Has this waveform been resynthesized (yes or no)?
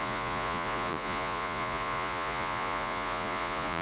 yes